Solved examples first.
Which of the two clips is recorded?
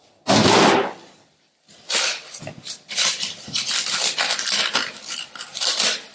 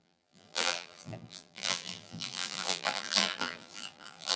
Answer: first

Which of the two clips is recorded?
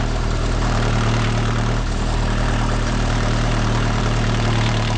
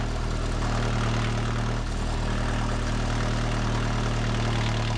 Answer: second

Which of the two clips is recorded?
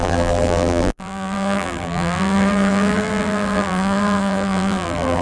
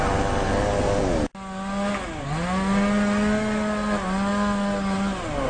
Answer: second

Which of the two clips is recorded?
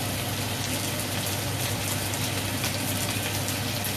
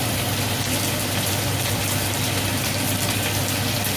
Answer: first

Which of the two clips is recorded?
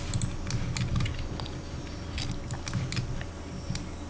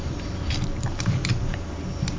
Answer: first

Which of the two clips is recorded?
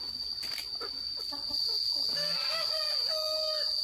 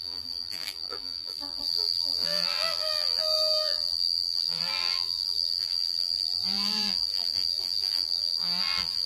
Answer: first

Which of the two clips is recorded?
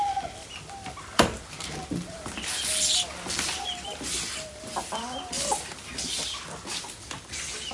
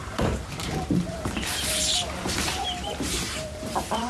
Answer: first